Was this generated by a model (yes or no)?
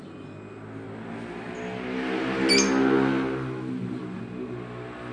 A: no